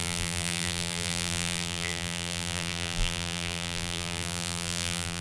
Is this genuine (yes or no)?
no